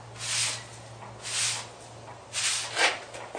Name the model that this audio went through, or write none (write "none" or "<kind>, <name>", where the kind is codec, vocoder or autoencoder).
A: none